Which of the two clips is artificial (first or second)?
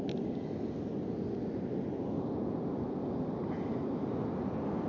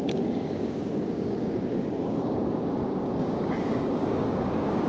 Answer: second